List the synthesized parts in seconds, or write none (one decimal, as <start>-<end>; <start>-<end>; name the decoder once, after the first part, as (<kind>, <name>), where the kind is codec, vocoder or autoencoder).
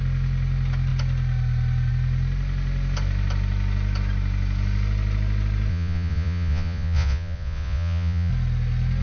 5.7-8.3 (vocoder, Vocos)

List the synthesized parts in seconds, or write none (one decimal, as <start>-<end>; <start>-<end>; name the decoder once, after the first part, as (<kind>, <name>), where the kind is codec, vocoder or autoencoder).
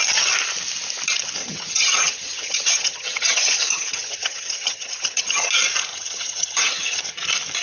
1.4-5.5 (vocoder, HiFi-GAN); 5.9-7.0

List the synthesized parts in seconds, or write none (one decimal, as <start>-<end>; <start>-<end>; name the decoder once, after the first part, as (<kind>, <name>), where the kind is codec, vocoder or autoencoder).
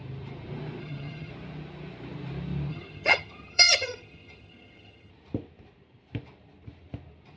0.8-1.3 (vocoder, HiFi-GAN); 2.7-5.1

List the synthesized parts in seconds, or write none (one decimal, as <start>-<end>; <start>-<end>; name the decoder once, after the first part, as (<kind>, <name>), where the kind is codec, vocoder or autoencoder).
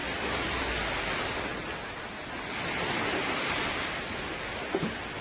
none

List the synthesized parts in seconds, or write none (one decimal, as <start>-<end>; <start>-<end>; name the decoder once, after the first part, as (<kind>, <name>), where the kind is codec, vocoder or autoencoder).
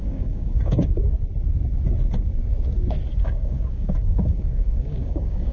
0.0-1.0 (codec, DAC); 3.2-5.5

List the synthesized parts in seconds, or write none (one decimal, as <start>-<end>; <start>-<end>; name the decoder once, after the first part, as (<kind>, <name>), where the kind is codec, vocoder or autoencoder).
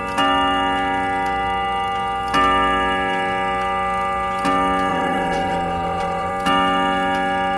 4.9-6.3 (vocoder, WaveNeXt)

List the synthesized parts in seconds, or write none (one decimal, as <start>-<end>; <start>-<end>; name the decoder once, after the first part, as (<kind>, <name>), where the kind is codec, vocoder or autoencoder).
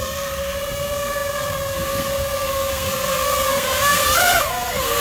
0.0-5.0 (codec, SNAC)